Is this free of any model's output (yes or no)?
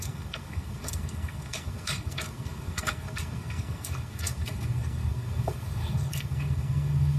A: no